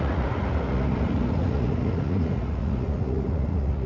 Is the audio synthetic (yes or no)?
yes